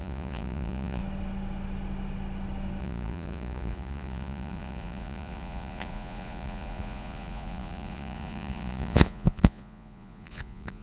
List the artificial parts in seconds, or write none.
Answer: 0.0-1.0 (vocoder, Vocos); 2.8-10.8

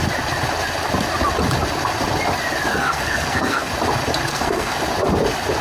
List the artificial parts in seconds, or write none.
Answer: 2.7-3.7 (codec, SNAC); 4.3-4.8